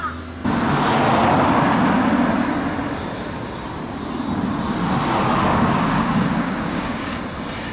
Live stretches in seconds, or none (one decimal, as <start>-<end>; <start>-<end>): 0.0-5.5; 7.2-7.7